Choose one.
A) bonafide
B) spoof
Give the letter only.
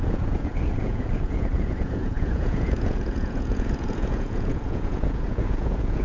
B